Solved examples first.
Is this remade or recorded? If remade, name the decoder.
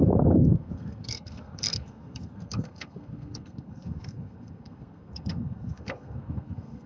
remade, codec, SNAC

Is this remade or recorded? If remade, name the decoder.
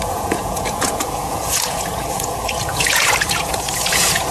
remade, vocoder, Vocos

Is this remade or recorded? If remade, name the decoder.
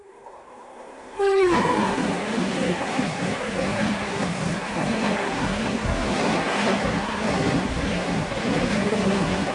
remade, codec, SNAC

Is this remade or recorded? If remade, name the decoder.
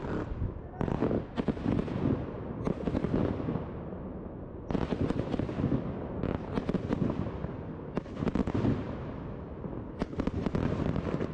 recorded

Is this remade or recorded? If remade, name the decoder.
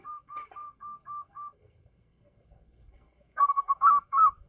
remade, codec, SNAC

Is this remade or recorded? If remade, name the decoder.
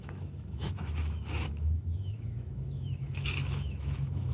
remade, autoencoder, DAC-VAE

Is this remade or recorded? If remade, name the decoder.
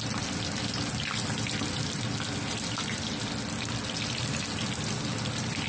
recorded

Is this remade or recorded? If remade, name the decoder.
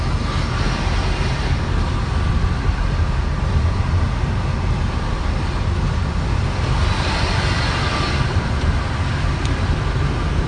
recorded